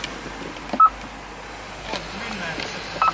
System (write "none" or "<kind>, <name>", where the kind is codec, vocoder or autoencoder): none